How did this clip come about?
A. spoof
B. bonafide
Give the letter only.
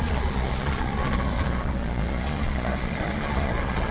A